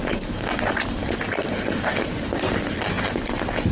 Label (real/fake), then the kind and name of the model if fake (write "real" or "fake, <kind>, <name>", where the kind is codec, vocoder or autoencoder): real